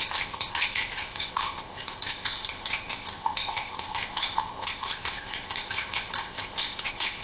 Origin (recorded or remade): remade